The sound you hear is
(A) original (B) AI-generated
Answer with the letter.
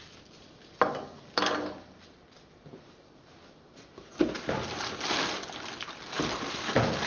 A